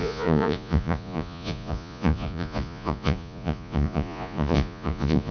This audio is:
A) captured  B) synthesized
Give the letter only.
B